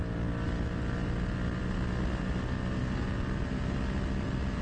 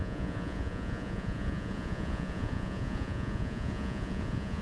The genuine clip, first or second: first